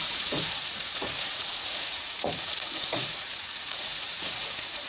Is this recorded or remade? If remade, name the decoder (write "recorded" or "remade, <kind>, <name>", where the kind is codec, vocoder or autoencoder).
remade, vocoder, Vocos